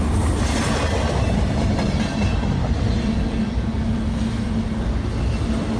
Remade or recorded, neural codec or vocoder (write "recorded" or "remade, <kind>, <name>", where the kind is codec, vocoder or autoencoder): recorded